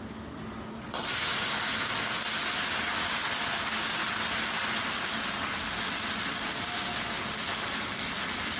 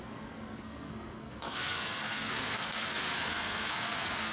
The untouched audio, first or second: first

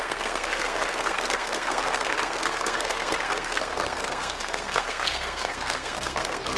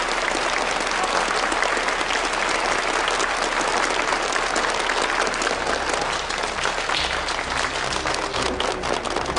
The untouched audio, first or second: second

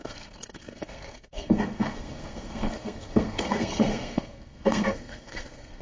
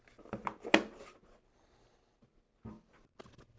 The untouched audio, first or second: second